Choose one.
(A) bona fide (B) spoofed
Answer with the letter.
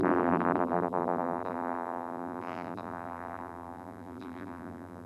B